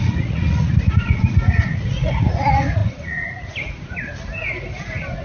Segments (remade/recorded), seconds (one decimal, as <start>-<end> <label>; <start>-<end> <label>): 0.0-4.1 remade; 4.1-4.8 recorded; 4.8-5.2 remade